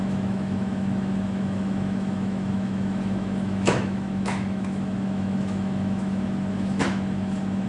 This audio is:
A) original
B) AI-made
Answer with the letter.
B